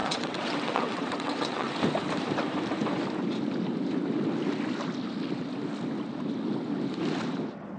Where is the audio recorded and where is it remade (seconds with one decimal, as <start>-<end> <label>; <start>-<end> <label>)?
0.0-1.7 remade; 1.7-7.8 recorded